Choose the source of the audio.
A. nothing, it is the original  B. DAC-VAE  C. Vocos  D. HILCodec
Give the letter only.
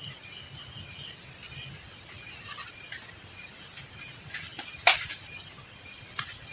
A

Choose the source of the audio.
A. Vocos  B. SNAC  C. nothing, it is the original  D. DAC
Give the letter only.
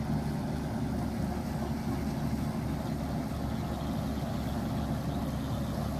C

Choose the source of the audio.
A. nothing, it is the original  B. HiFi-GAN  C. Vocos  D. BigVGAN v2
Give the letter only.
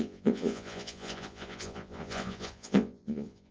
C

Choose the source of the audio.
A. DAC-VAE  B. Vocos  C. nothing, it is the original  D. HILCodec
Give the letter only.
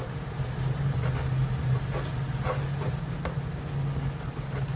C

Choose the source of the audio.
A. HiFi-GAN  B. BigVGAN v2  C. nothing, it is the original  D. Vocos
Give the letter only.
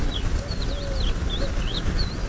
C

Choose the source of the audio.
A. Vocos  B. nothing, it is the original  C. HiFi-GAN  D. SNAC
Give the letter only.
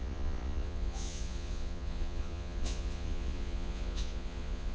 A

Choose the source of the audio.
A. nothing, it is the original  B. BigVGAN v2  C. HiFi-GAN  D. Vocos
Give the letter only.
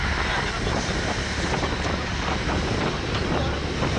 A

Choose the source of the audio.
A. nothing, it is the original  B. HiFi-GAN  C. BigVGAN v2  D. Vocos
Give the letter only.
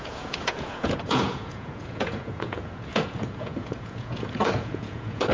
D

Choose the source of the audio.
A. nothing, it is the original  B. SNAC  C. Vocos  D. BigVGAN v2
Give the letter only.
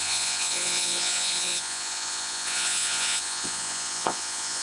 C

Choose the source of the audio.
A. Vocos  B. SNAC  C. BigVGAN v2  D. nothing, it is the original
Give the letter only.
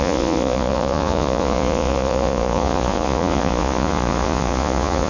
A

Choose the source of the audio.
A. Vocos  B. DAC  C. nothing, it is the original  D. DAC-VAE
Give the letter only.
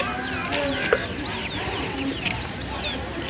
C